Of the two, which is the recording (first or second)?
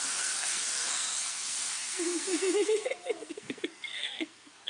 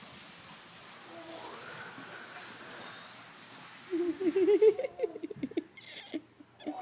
second